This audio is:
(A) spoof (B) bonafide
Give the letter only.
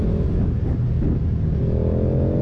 B